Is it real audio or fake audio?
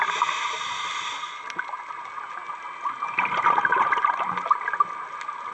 real